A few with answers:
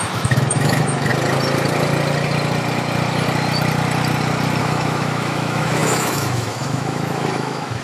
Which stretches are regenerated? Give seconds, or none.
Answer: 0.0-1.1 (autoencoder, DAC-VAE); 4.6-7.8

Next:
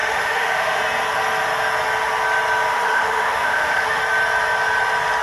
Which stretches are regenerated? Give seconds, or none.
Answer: 0.0-0.8 (autoencoder, DAC-VAE); 2.7-4.0

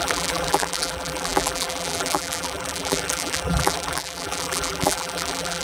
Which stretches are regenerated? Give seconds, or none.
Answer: 0.0-5.6 (vocoder, BigVGAN v2)